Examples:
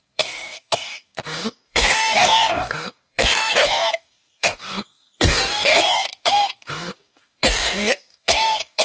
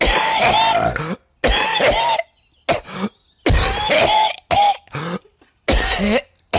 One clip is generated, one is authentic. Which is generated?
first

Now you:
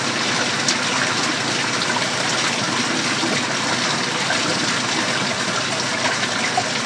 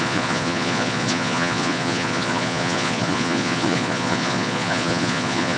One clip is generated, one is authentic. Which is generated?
second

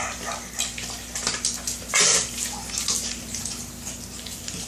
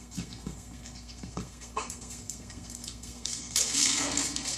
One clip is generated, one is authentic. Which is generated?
second